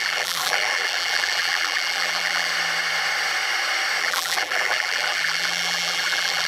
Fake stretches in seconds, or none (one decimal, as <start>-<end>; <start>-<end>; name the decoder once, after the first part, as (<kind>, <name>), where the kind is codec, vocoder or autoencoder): 0.0-2.5 (vocoder, BigVGAN v2); 4.0-6.5